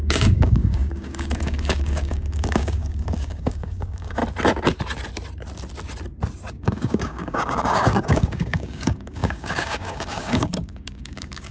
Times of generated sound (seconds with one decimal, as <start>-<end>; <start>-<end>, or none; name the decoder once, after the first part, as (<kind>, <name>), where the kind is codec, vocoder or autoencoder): 0.0-4.2 (codec, DAC); 6.5-11.5